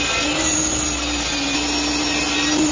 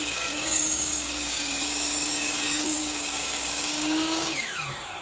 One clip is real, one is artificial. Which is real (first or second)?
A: first